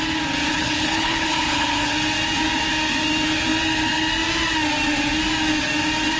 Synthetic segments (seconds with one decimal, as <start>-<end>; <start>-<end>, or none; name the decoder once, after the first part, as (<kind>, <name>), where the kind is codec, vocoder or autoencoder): 0.5-1.9 (codec, HILCodec)